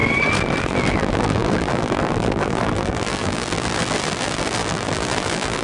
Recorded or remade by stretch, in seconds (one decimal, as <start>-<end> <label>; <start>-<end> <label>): 0.0-0.6 recorded; 0.6-5.6 remade